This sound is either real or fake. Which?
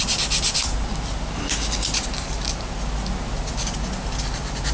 real